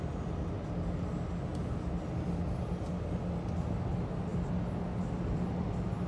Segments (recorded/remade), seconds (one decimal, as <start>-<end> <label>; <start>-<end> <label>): 0.0-6.1 recorded